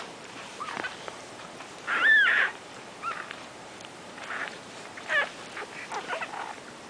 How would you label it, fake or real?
fake